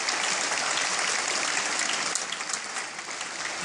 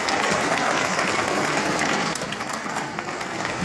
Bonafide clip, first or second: first